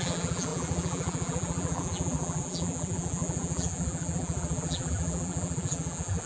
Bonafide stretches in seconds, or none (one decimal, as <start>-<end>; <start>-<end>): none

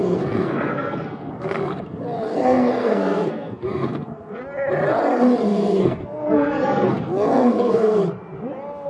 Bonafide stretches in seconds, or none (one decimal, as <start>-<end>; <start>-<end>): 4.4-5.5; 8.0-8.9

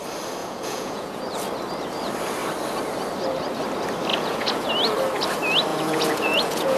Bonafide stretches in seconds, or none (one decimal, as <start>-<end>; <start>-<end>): 0.0-0.4; 1.2-4.1; 4.7-5.7

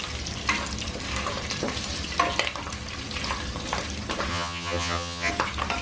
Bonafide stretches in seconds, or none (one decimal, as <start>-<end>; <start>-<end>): 0.0-4.3; 5.3-5.8